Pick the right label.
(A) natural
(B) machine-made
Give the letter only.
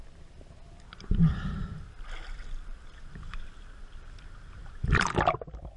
A